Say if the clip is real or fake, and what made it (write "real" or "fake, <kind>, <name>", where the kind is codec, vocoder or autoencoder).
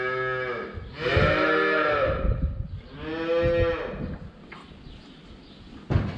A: real